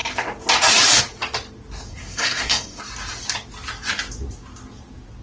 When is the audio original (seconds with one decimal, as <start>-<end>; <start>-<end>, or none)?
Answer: 0.0-1.9; 2.8-5.2